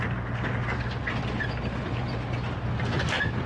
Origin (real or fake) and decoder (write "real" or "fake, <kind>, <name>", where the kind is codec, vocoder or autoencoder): real